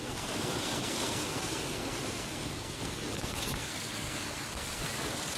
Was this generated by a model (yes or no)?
yes